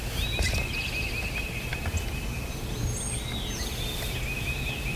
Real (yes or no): yes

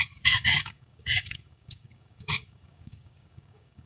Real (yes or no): no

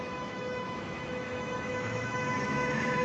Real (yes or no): no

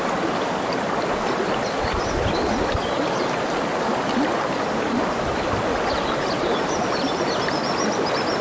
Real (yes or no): yes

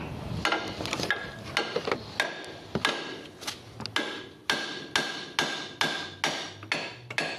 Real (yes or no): yes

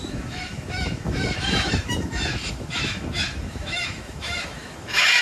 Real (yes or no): no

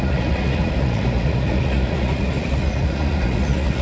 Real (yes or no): no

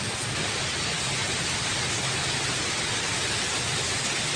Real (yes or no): yes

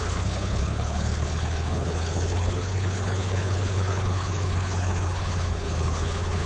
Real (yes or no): no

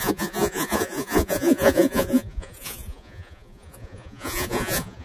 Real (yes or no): no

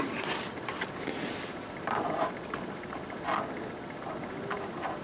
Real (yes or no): yes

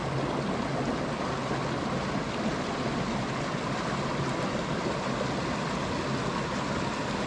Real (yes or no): yes